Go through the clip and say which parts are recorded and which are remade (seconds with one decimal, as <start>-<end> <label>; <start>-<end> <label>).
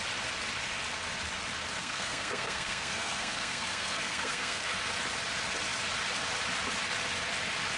0.0-1.8 recorded; 1.8-4.7 remade; 4.7-7.8 recorded